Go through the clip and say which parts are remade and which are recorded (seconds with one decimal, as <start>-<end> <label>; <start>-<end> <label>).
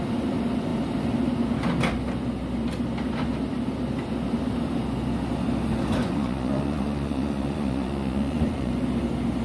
0.0-6.0 recorded; 6.0-8.7 remade; 8.7-9.4 recorded